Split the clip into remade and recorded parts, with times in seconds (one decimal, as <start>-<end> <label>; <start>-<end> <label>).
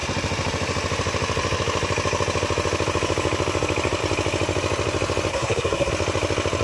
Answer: 0.0-5.3 recorded; 5.3-5.9 remade; 5.9-6.6 recorded